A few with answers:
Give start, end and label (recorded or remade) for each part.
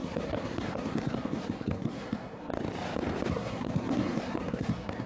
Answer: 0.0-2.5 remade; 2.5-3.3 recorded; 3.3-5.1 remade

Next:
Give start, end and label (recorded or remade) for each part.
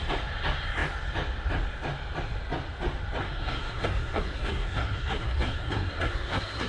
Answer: 0.0-3.2 recorded; 3.2-6.7 remade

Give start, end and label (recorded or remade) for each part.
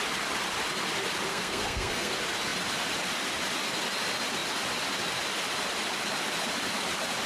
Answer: 0.0-1.3 recorded; 1.3-2.1 remade; 2.1-7.3 recorded